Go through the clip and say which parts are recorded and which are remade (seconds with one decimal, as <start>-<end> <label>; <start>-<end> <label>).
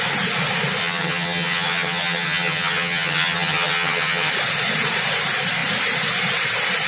0.0-0.8 recorded; 0.8-4.3 remade; 4.3-6.9 recorded